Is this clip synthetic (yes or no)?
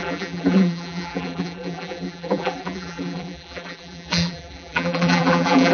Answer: yes